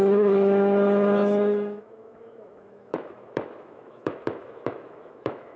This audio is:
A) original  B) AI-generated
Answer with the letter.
B